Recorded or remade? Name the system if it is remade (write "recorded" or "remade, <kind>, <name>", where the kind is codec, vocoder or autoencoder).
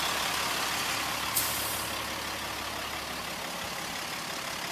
recorded